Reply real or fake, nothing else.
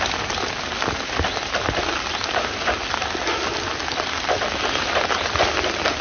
real